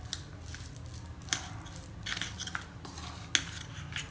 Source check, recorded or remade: recorded